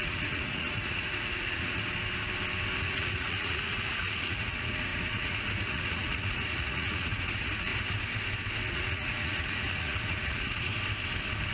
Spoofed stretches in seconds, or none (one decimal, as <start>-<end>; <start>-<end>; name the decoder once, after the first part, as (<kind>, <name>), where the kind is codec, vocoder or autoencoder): 0.0-1.8 (vocoder, Vocos); 2.8-7.7; 8.7-10.7